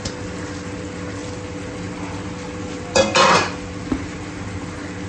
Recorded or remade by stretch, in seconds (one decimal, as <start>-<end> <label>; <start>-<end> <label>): 0.0-5.1 recorded